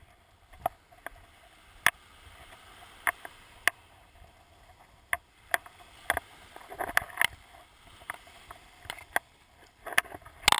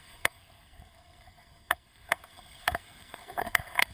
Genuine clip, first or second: first